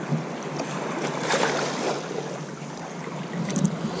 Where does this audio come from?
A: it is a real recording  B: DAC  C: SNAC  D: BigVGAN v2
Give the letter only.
A